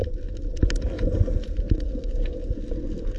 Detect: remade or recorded recorded